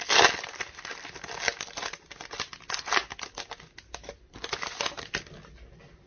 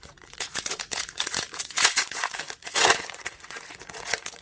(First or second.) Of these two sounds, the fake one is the second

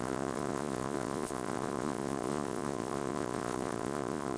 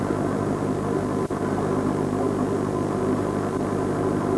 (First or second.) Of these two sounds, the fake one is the first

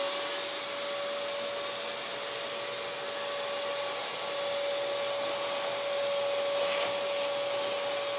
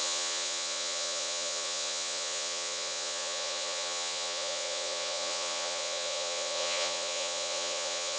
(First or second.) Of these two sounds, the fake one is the second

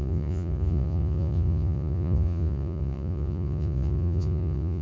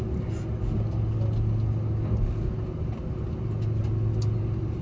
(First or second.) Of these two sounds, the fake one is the first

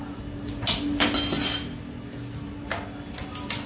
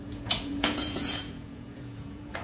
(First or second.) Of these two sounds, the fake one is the second